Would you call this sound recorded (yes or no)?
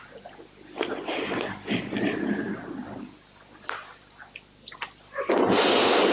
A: yes